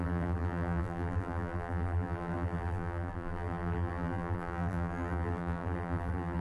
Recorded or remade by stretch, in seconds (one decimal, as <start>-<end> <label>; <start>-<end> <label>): 0.0-6.4 remade

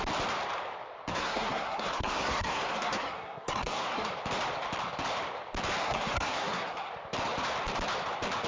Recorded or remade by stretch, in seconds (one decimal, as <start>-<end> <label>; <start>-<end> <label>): 0.0-1.1 recorded; 1.1-4.1 remade; 4.1-5.8 recorded; 5.8-6.9 remade; 6.9-8.5 recorded

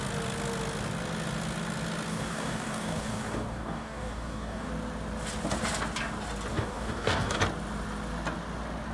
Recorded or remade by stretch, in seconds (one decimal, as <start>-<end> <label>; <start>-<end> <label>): 0.0-2.1 recorded; 2.1-4.7 remade; 4.7-6.5 recorded; 6.5-7.4 remade; 7.4-8.9 recorded

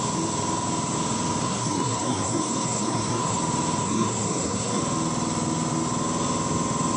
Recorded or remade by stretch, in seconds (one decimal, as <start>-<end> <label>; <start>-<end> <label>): 0.0-1.4 recorded; 1.4-3.4 remade; 3.4-3.8 recorded; 3.8-4.8 remade; 4.8-7.0 recorded

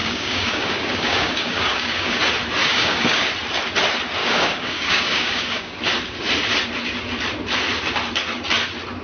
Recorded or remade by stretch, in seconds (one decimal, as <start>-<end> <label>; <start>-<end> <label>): 0.0-2.2 remade; 2.2-2.6 recorded; 2.6-3.3 remade; 3.3-4.2 recorded; 4.2-5.8 remade; 5.8-9.0 recorded

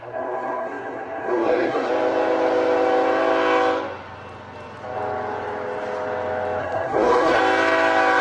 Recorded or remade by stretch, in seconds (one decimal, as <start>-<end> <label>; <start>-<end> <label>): 0.0-1.9 remade; 1.9-6.6 recorded; 6.6-7.4 remade; 7.4-8.2 recorded

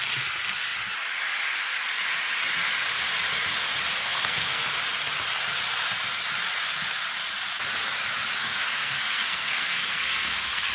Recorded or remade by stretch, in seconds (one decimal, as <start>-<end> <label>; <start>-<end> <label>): 0.0-4.0 recorded; 4.0-4.7 remade; 4.7-8.4 recorded; 8.4-10.7 remade